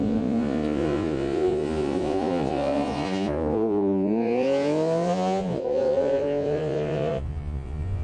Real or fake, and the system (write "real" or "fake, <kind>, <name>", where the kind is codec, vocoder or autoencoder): fake, vocoder, Vocos